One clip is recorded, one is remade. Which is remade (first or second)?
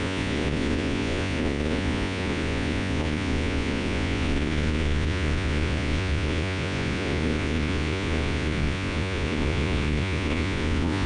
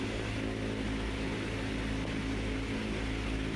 first